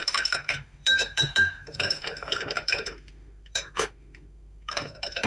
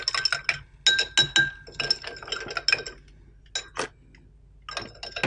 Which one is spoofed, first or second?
first